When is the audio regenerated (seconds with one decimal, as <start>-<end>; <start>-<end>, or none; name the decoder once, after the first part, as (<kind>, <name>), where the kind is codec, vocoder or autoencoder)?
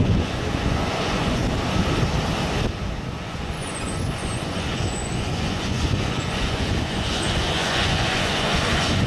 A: 0.0-1.4 (vocoder, Vocos); 3.2-9.1